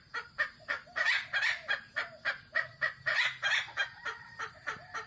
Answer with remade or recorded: remade